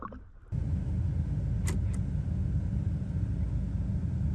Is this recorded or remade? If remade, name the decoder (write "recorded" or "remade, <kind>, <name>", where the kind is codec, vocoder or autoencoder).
recorded